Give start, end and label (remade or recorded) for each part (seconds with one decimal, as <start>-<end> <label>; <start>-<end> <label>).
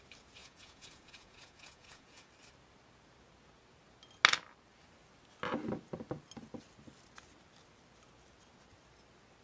0.0-0.4 recorded; 0.4-2.3 remade; 2.3-9.4 recorded